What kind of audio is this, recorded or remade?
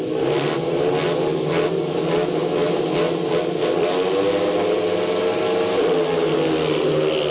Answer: recorded